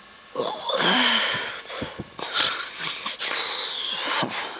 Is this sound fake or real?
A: real